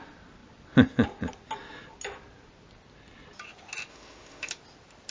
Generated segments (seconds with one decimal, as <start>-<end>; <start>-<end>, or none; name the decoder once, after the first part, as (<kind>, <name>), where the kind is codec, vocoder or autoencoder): 3.9-4.5 (autoencoder, DAC-VAE)